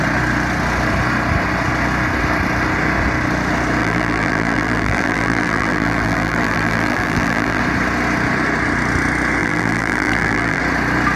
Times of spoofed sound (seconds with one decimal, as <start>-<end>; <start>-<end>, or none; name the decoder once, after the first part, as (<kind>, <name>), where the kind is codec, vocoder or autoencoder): 3.8-7.6 (vocoder, BigVGAN v2); 9.4-10.6